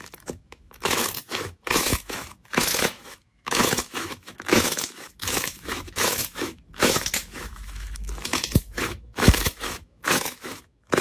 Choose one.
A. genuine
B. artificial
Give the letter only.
B